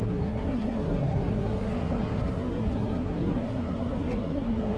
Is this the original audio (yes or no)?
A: no